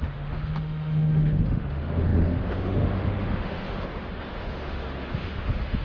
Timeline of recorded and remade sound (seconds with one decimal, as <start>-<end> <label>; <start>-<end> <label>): 0.0-5.8 remade